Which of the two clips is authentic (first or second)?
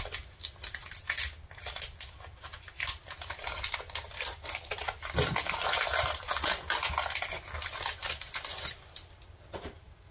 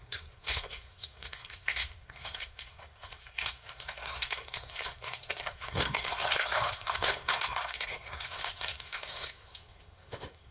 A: first